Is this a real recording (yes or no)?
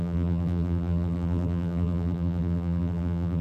no